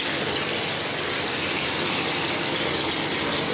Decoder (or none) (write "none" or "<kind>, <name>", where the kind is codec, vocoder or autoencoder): none